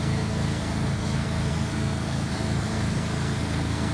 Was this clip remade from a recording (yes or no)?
yes